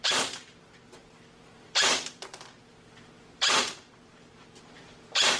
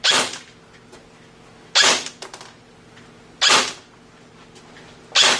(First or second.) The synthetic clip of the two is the first